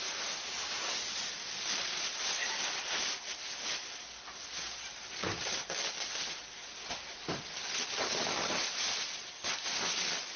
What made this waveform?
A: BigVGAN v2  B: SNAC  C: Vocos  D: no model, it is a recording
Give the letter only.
D